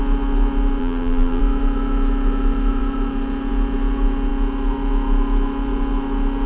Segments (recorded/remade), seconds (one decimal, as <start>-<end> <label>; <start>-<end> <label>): 0.0-0.8 recorded; 0.8-1.4 remade; 1.4-6.5 recorded